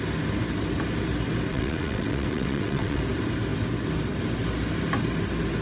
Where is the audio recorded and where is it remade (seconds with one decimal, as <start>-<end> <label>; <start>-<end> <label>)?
0.0-1.5 recorded; 1.5-3.0 remade; 3.0-5.6 recorded